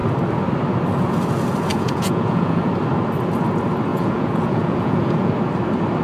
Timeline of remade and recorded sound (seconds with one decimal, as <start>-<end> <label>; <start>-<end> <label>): 0.0-1.7 recorded; 1.7-2.7 remade; 2.7-3.9 recorded; 3.9-5.3 remade; 5.3-6.0 recorded